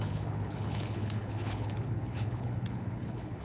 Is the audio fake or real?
fake